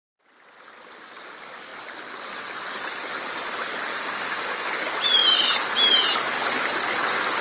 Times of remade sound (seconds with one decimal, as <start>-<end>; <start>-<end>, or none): 3.9-4.7